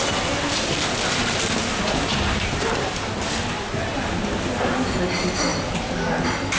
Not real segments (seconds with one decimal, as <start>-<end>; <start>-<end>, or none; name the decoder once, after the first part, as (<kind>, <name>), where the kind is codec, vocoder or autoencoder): none